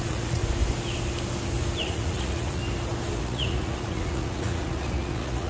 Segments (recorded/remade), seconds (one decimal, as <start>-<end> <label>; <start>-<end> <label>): 0.0-0.4 remade; 0.4-1.8 recorded; 1.8-2.6 remade; 2.6-3.2 recorded; 3.2-5.5 remade